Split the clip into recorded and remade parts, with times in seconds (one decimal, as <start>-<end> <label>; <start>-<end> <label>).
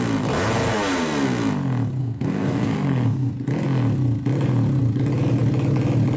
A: 0.0-2.0 recorded; 2.0-3.3 remade; 3.3-6.2 recorded